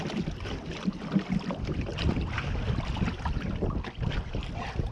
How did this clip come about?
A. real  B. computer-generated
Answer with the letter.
A